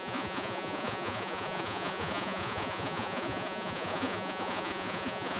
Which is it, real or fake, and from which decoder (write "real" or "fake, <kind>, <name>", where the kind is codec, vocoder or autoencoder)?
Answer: fake, vocoder, Vocos